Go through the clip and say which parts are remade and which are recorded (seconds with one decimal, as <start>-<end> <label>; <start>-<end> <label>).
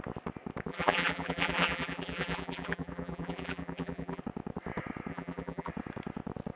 0.0-0.7 recorded; 0.7-4.2 remade; 4.2-5.1 recorded; 5.1-5.7 remade; 5.7-6.6 recorded